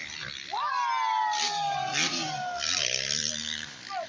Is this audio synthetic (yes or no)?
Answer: no